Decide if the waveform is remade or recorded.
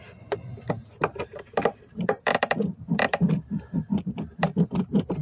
remade